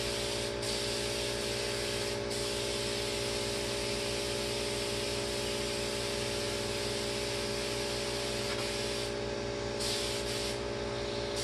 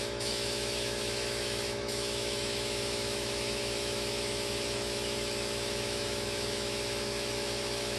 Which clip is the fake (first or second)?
second